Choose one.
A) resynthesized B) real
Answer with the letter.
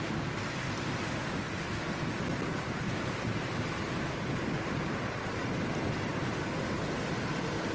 B